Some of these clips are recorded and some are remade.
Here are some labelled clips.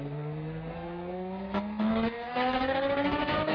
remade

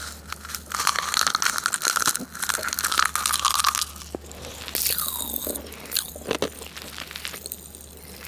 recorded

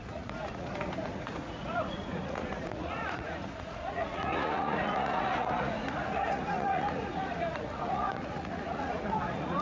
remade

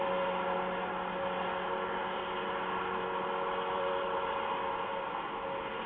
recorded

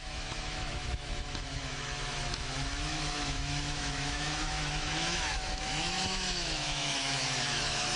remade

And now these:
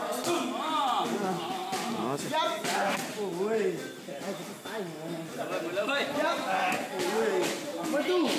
recorded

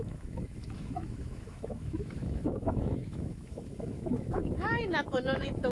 remade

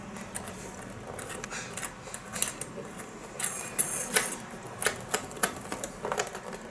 recorded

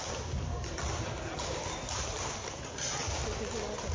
recorded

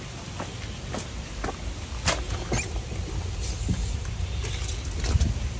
recorded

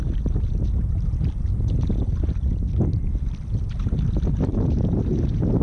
recorded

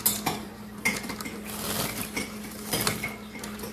recorded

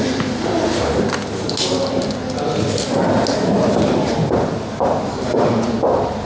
recorded